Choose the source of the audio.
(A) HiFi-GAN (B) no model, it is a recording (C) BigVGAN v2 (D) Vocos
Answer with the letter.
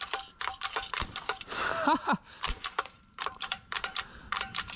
C